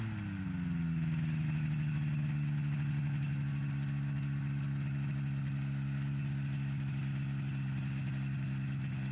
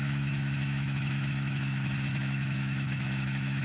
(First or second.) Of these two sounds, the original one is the first